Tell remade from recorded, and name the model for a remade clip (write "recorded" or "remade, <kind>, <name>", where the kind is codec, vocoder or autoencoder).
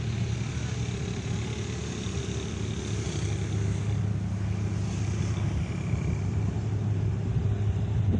recorded